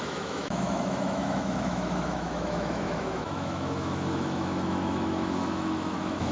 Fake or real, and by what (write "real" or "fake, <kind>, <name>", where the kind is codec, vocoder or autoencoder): fake, autoencoder, DAC-VAE